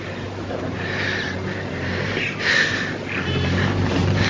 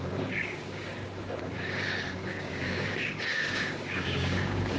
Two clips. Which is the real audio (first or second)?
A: first